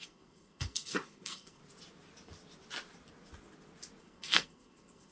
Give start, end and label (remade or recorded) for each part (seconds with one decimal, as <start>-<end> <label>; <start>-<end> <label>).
0.0-1.6 remade; 1.6-4.0 recorded; 4.0-5.1 remade